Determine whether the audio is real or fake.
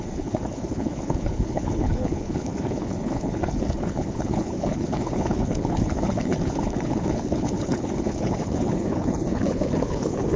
fake